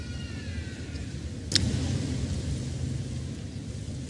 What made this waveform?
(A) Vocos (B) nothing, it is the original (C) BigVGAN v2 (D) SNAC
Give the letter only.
B